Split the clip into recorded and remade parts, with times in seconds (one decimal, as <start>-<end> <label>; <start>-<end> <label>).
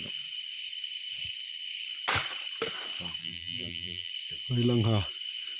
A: 0.0-3.2 recorded; 3.2-4.1 remade; 4.1-5.6 recorded